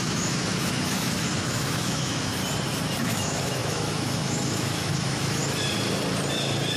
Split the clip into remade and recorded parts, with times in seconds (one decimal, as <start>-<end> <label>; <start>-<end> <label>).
0.0-2.4 remade; 2.4-3.0 recorded; 3.0-5.4 remade; 5.4-6.8 recorded